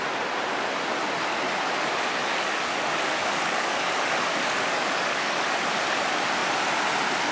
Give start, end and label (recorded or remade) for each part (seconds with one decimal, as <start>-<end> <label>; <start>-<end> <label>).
0.0-2.2 recorded; 2.2-5.6 remade; 5.6-7.3 recorded